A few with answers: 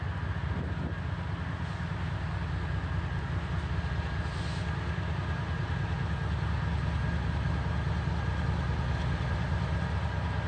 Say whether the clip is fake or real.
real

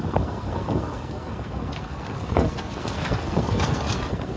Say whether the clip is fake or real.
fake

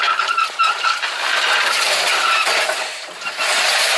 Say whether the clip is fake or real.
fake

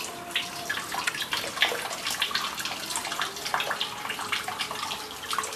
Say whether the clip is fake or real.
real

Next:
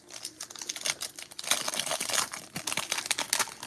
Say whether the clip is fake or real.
real